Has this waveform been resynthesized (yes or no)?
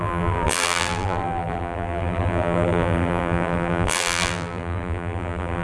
yes